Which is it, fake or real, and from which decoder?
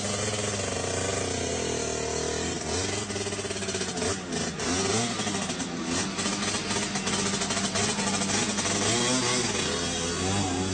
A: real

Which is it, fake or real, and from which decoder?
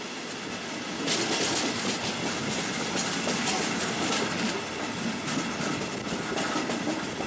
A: real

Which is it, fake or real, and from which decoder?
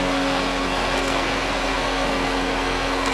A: fake, codec, SNAC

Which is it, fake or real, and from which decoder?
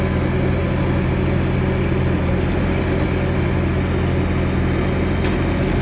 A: real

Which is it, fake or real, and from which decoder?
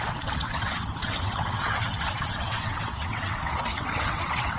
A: fake, vocoder, WaveNeXt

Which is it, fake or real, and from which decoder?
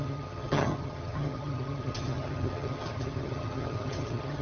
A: fake, vocoder, HiFi-GAN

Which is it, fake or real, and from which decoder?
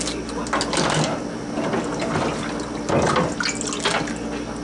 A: real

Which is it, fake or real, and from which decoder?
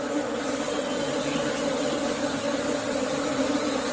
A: real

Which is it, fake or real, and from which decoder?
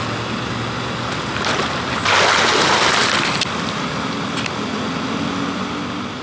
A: real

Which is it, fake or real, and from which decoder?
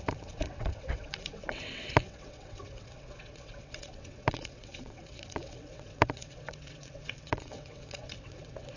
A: fake, vocoder, WaveNeXt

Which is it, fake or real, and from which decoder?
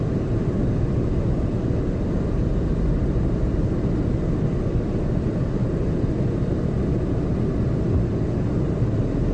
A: real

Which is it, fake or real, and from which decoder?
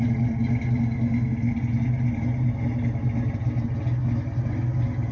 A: real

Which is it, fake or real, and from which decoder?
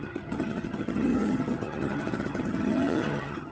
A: fake, vocoder, HiFi-GAN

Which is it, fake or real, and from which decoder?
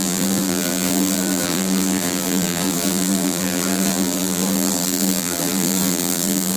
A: fake, vocoder, BigVGAN v2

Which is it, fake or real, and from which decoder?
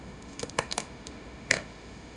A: fake, autoencoder, DAC-VAE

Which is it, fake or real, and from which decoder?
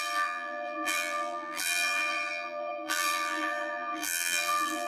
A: fake, vocoder, BigVGAN v2